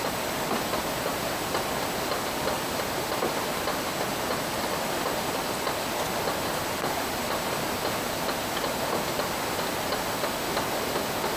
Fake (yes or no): no